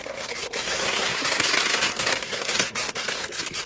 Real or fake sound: fake